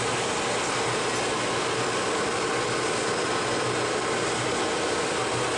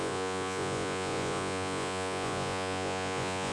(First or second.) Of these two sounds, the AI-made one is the second